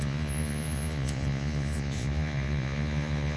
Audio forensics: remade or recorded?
remade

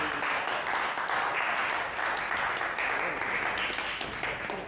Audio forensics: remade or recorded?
recorded